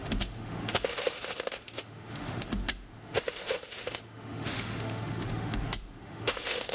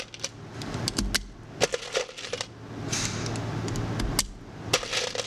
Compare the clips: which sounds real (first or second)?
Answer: second